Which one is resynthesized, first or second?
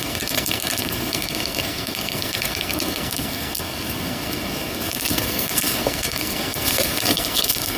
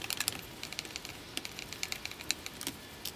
first